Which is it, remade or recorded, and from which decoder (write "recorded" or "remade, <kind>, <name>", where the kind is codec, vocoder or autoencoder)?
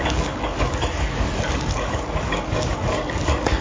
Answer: remade, codec, DAC